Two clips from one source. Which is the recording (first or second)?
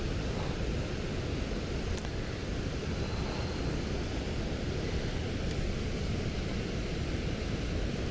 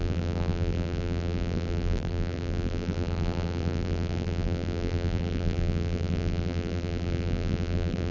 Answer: first